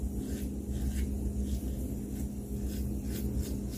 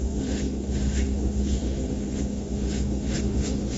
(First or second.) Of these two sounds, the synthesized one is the second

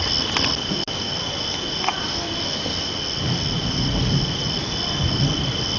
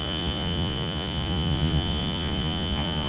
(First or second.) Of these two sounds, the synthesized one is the second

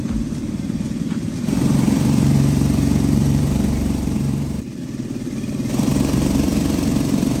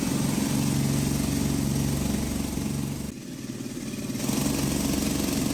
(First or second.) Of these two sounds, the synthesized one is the first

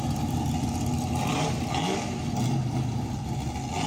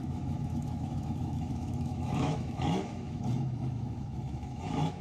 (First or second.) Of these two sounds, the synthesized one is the second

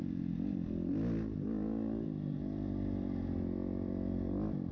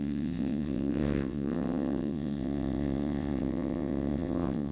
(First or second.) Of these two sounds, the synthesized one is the second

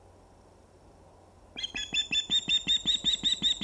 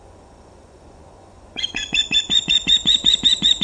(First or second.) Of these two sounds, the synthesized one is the second